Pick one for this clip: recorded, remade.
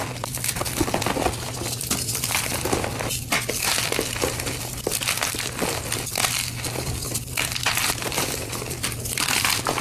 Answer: recorded